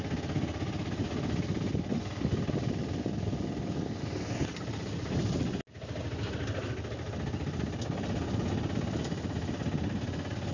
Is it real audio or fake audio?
real